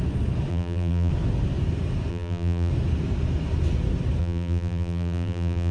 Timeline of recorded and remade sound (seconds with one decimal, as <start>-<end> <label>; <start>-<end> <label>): 0.0-0.5 recorded; 0.5-1.1 remade; 1.1-2.1 recorded; 2.1-2.7 remade; 2.7-4.2 recorded; 4.2-5.7 remade